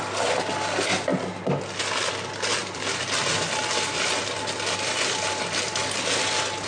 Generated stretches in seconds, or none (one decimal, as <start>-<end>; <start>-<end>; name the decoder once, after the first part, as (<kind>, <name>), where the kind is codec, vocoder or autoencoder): 2.6-5.8 (vocoder, BigVGAN v2)